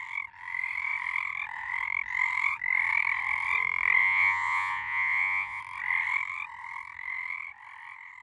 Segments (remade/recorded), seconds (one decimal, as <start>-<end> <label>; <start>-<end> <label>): 0.0-4.0 recorded; 4.0-5.6 remade; 5.6-8.2 recorded